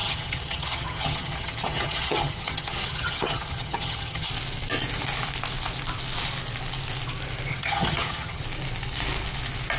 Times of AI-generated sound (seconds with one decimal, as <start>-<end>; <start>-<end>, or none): 0.0-4.3; 7.5-8.4